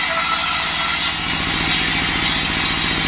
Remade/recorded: recorded